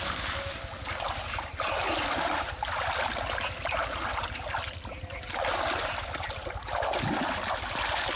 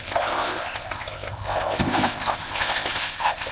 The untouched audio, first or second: first